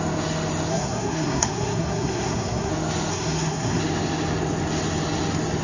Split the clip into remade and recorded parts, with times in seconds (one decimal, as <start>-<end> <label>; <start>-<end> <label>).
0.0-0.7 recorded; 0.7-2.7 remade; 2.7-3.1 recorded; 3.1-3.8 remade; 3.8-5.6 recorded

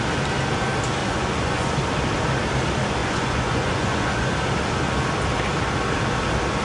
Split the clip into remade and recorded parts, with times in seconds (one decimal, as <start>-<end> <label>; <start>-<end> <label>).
0.0-1.0 recorded; 1.0-1.7 remade; 1.7-3.0 recorded; 3.0-4.3 remade; 4.3-6.6 recorded

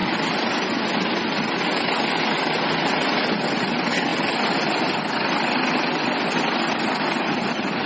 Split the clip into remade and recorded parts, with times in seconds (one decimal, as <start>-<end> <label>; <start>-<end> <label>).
0.0-7.9 recorded